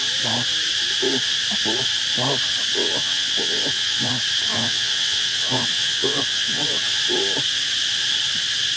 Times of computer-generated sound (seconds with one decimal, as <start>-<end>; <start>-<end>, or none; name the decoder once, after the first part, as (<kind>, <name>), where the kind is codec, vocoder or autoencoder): 2.8-4.1 (vocoder, WaveNeXt); 4.5-7.0

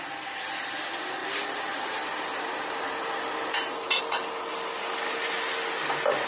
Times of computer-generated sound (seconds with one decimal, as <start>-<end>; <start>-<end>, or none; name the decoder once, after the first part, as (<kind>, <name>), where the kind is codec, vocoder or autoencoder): none

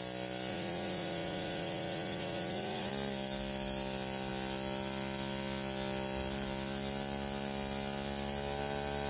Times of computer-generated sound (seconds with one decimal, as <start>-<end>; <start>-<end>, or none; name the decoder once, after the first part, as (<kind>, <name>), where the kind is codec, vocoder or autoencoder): 0.5-2.9 (vocoder, Vocos)

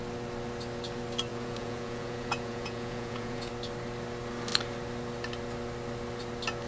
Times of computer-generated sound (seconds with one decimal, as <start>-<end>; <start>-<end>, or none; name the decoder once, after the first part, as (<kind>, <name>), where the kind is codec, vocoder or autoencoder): 1.3-3.5 (vocoder, Vocos)

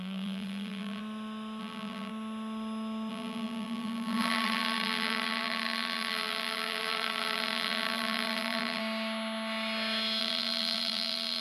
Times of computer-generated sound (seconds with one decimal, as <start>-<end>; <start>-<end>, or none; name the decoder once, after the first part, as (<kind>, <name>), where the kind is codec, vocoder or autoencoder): 0.0-1.0 (vocoder, BigVGAN v2); 1.6-2.1; 3.1-8.8; 10.2-11.4

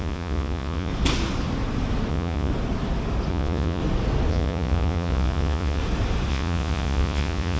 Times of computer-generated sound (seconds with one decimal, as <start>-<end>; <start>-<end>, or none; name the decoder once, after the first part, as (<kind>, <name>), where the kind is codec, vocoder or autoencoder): 0.0-0.9 (vocoder, Vocos); 2.1-2.5; 3.3-3.8; 4.3-5.8; 6.3-7.6

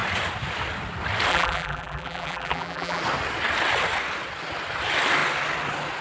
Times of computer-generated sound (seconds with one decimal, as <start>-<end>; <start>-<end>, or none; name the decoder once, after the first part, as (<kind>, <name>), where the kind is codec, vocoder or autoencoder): 1.3-3.0 (vocoder, BigVGAN v2)

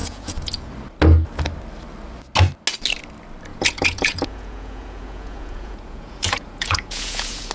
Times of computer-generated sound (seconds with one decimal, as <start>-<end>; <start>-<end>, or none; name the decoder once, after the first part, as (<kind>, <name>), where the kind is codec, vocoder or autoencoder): 0.0-0.7 (vocoder, Vocos); 3.5-7.5